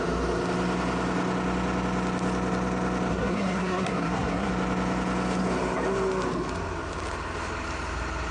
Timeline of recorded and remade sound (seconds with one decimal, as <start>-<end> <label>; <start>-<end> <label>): 0.0-3.1 recorded; 3.1-4.5 remade; 4.5-8.3 recorded